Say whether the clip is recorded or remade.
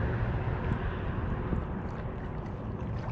recorded